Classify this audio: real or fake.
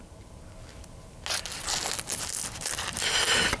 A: real